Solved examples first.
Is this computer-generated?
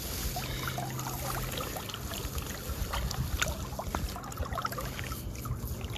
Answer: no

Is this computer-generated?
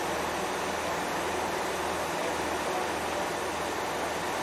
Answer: no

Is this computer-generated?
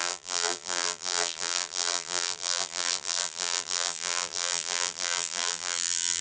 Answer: yes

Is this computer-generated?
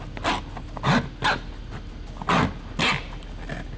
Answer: no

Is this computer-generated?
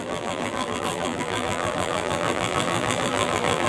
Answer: yes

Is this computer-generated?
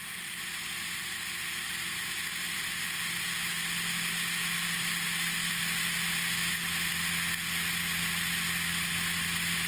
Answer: no